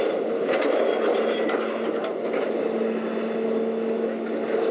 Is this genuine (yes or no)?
yes